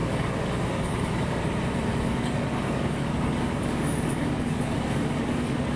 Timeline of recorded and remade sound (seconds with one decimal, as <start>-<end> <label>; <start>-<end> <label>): 0.0-1.4 remade; 1.4-1.9 recorded; 1.9-5.8 remade